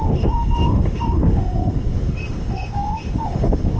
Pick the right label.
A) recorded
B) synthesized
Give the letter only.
B